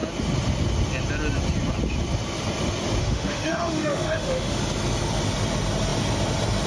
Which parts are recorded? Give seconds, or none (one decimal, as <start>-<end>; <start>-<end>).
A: 0.0-3.0; 4.6-6.7